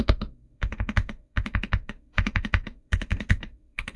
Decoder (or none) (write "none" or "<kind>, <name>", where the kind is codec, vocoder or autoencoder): autoencoder, DAC-VAE